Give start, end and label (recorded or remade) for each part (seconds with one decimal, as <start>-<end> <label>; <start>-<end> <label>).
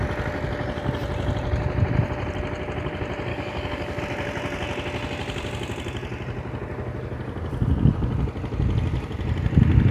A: 0.0-3.3 recorded; 3.3-4.0 remade; 4.0-9.9 recorded